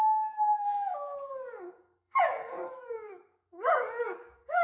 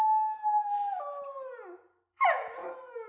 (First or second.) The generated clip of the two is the first